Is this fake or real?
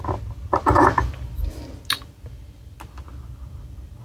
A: real